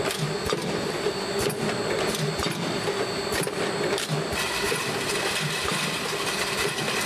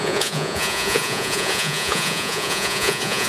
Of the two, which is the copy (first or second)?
second